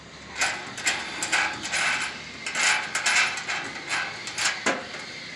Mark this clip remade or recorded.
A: recorded